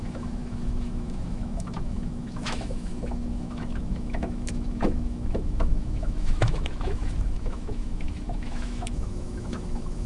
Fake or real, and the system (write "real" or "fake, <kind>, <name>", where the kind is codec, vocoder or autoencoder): fake, autoencoder, DAC-VAE